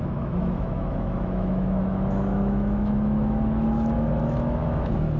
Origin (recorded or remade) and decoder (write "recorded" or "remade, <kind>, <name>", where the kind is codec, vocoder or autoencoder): remade, autoencoder, DAC-VAE